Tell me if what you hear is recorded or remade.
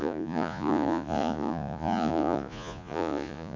remade